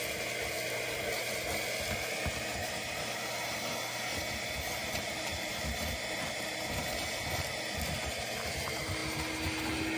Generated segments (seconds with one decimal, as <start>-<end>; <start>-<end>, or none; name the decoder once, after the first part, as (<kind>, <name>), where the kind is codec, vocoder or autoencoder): 4.8-5.5 (vocoder, BigVGAN v2)